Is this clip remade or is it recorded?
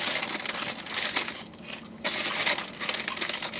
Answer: recorded